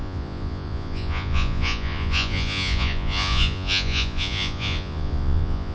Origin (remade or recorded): remade